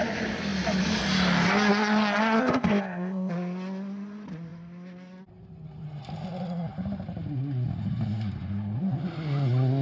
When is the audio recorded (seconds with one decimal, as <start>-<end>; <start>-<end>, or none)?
0.0-2.4; 3.3-9.8